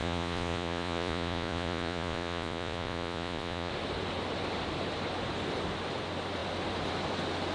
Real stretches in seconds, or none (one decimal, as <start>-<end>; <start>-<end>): 3.7-7.5